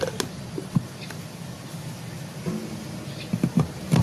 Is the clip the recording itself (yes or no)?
yes